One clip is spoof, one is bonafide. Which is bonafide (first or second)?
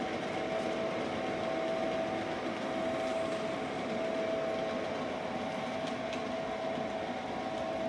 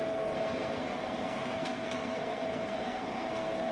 first